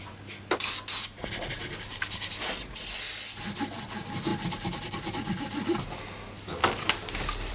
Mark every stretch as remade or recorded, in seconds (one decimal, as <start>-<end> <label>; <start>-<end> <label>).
0.0-7.5 recorded